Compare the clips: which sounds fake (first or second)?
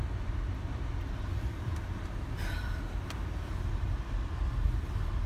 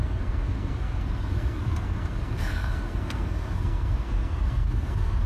second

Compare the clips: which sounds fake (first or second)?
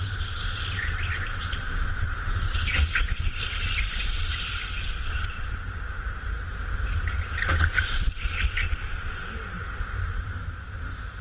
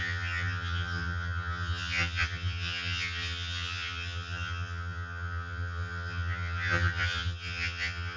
second